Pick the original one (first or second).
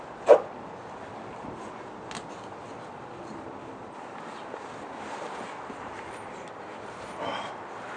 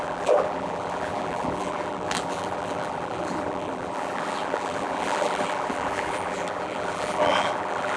first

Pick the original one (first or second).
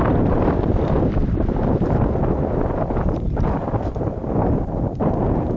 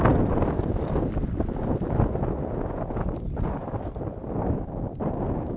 second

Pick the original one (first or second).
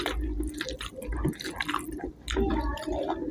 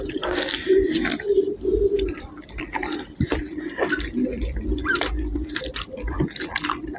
first